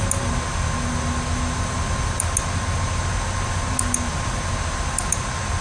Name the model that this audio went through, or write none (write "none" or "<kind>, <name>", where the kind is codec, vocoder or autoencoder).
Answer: none